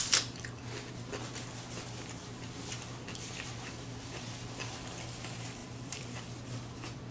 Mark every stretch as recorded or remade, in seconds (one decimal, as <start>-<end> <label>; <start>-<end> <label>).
0.0-5.6 recorded; 5.6-7.1 remade